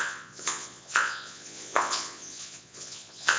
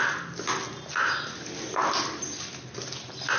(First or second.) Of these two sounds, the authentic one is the second